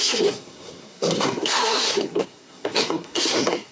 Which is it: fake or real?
fake